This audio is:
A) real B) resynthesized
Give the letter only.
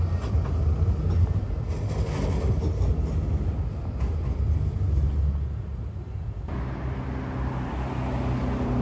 A